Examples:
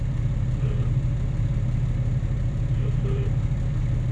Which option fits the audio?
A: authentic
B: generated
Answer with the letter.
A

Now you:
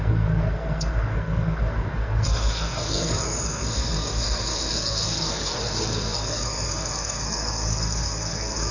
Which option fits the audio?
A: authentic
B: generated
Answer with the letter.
B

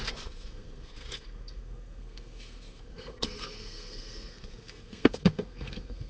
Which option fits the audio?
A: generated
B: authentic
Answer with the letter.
A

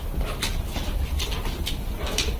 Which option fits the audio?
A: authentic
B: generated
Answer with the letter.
A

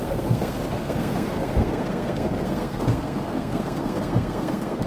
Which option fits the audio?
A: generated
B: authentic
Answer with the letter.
A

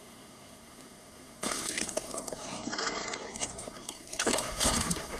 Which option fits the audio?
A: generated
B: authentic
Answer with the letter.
A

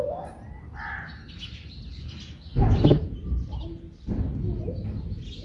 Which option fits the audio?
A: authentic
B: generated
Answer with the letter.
A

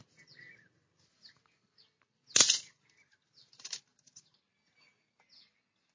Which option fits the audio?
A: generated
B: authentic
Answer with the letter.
B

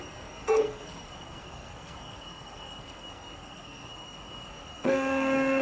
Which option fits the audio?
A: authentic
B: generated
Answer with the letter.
B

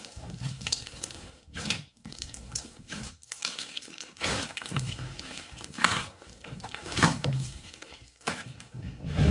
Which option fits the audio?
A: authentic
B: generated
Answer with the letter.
B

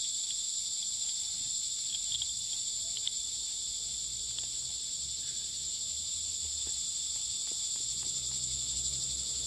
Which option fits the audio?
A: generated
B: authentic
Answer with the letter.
B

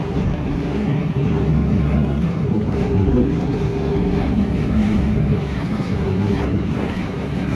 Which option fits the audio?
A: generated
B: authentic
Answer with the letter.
A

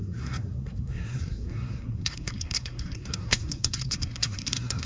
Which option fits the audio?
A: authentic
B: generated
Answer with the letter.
B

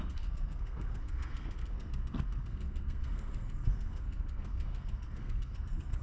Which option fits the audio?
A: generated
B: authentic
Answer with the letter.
A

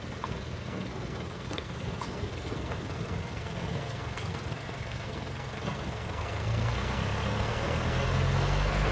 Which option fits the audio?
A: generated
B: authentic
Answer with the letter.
A